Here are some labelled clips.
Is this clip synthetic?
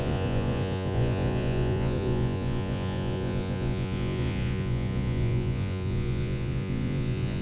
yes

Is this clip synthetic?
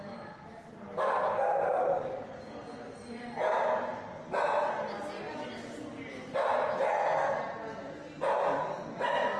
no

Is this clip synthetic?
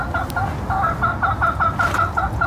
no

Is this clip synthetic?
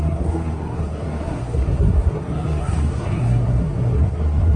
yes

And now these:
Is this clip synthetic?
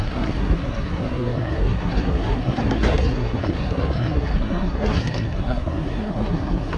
yes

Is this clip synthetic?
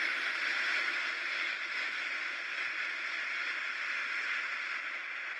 no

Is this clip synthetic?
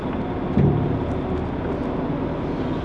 no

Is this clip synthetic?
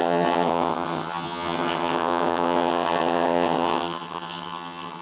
yes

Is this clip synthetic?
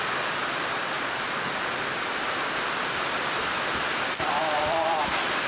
yes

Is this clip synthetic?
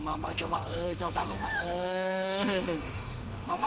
yes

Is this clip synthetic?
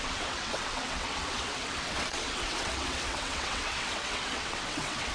yes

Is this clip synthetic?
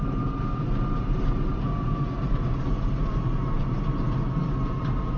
yes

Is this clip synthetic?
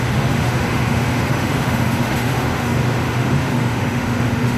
yes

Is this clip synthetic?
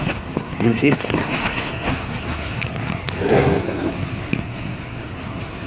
yes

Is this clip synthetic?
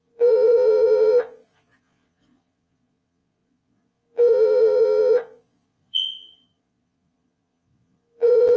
yes